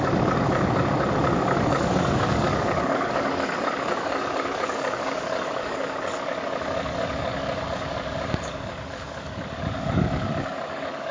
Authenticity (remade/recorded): remade